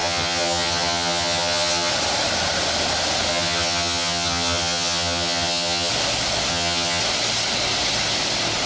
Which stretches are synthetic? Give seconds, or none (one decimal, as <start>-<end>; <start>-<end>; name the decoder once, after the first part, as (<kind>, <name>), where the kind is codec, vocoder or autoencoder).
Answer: 0.0-1.9 (vocoder, HiFi-GAN); 3.3-5.9; 6.5-7.0